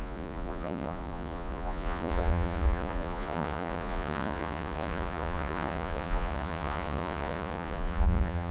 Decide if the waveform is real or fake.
fake